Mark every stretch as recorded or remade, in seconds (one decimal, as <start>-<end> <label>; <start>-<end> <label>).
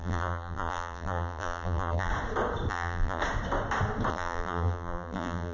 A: 0.0-2.1 remade; 2.1-2.7 recorded; 2.7-3.2 remade; 3.2-4.1 recorded; 4.1-5.5 remade